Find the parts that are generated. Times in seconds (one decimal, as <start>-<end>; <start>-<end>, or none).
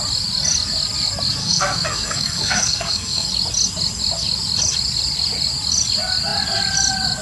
1.4-3.3